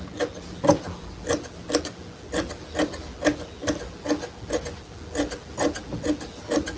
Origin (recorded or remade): recorded